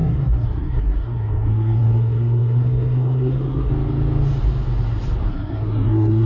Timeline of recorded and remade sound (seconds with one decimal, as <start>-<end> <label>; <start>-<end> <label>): 0.0-3.7 remade; 3.7-5.3 recorded; 5.3-6.3 remade